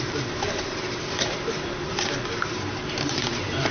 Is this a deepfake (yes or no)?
yes